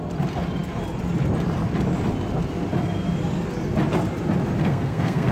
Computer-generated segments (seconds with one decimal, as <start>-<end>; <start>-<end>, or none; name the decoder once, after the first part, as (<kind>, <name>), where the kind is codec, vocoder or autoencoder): 4.6-5.3 (codec, SNAC)